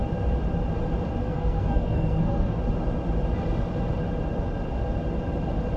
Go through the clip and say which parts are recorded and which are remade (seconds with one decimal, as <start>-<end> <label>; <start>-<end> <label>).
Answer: 0.0-1.2 recorded; 1.2-2.6 remade; 2.6-5.8 recorded